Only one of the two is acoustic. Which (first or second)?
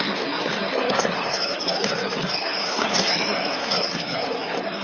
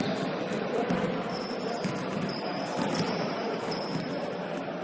second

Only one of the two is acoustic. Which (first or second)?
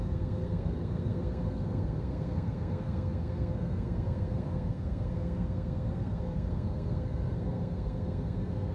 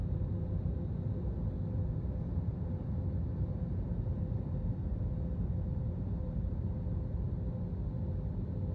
second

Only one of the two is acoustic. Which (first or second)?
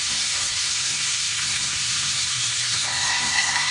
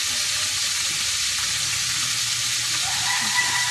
second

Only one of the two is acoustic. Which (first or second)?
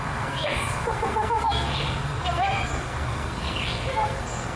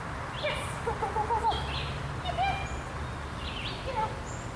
second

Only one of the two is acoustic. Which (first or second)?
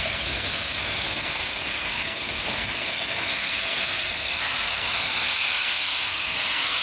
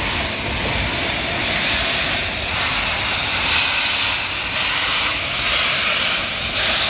second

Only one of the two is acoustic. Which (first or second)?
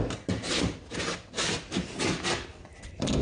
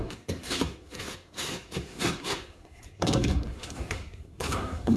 first